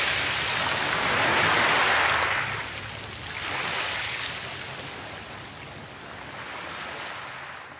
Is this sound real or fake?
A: real